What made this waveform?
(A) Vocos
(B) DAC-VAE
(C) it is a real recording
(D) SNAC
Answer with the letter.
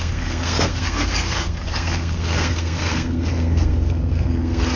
D